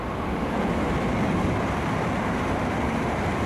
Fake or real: fake